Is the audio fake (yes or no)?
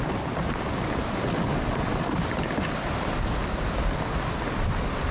no